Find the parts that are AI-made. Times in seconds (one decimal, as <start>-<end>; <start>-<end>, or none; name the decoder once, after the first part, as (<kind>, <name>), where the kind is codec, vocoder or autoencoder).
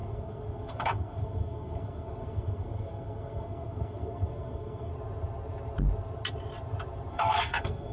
0.0-4.9 (codec, SNAC); 7.1-7.9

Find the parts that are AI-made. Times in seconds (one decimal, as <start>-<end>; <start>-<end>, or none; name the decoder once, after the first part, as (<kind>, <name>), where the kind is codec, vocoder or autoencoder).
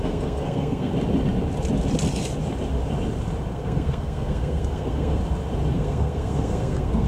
0.0-0.9 (codec, SNAC); 3.5-5.2; 5.7-7.1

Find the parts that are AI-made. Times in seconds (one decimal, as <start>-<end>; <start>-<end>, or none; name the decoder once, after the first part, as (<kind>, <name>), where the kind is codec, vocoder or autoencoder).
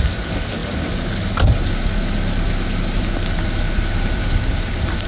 none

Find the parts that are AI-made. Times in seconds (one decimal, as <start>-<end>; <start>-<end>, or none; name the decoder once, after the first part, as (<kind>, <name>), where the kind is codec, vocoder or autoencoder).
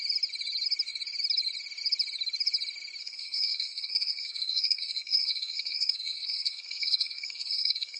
3.0-8.0 (codec, SNAC)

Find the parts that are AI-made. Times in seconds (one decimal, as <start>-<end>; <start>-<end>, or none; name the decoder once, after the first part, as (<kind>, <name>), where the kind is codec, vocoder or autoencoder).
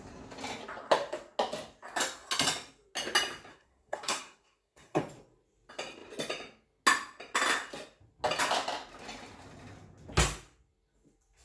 3.5-5.0 (codec, SNAC)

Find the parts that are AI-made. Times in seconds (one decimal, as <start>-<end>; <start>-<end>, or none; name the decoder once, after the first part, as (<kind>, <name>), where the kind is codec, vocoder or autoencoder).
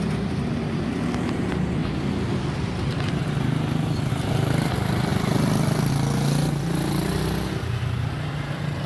none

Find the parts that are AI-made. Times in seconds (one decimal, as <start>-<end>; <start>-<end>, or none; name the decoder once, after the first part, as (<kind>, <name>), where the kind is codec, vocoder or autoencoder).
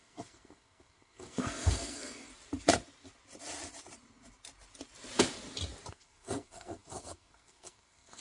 0.0-2.3 (codec, SNAC); 5.9-8.2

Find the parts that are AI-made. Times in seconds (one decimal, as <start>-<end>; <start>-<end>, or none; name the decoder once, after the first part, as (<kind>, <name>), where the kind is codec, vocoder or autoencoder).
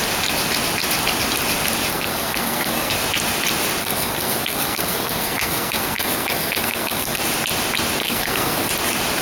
1.9-2.9 (codec, SNAC); 3.8-7.2; 8.0-8.7